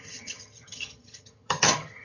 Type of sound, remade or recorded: remade